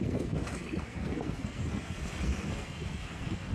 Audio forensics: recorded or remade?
remade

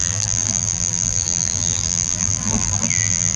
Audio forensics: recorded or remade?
remade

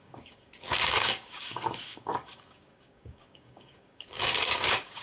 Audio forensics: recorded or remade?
remade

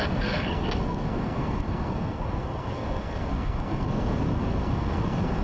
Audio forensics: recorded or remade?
remade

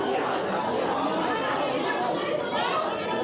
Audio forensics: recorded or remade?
recorded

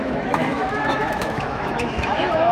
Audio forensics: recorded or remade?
remade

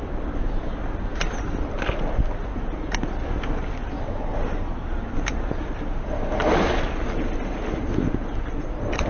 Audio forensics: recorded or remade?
recorded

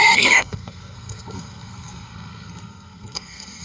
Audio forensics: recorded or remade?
remade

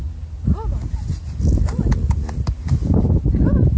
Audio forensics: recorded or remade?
recorded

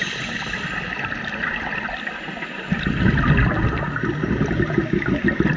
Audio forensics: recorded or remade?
recorded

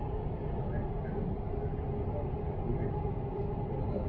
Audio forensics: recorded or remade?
recorded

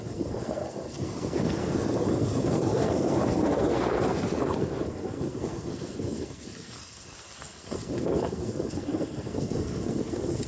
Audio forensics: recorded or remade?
remade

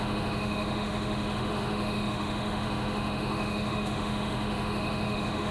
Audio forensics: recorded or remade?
remade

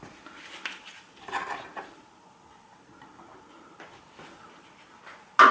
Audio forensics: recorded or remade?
recorded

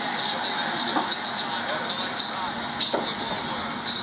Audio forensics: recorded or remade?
recorded